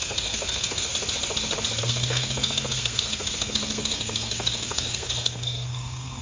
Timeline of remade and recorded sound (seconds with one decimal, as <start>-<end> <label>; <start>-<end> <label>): 0.0-0.9 remade; 0.9-1.8 recorded; 1.8-6.2 remade

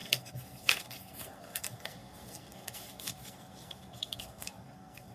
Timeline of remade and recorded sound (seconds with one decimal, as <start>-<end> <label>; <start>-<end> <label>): 0.0-5.1 remade